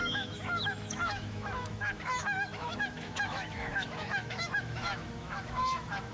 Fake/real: fake